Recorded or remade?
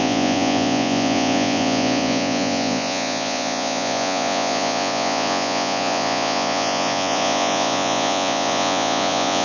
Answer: remade